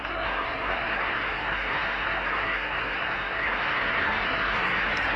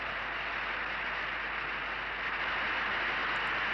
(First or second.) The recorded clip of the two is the second